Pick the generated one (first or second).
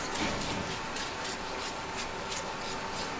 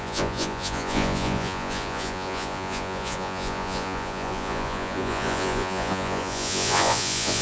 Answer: second